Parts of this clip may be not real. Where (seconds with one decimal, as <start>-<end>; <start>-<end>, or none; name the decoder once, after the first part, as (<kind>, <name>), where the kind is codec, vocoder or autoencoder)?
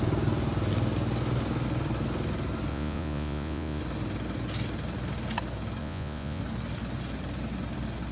2.7-3.8 (vocoder, Vocos); 5.8-6.4